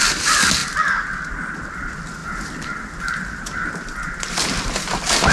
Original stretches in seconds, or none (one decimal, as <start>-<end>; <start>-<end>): 0.0-5.3